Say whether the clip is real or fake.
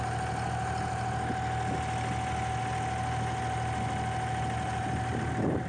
real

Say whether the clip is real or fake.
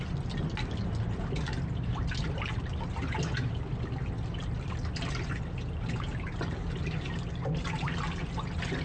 real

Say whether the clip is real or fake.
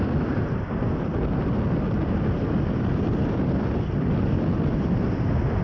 real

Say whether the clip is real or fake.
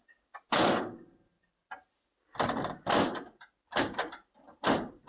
real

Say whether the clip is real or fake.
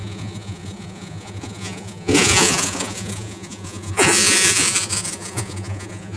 fake